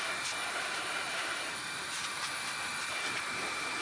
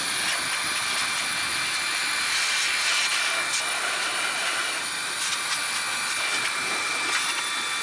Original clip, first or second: second